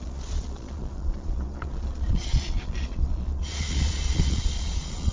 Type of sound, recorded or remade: remade